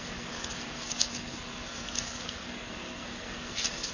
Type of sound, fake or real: fake